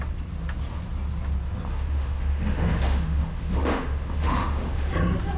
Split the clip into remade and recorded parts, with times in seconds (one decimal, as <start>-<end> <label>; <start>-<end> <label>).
0.0-1.7 recorded; 1.7-4.9 remade; 4.9-5.4 recorded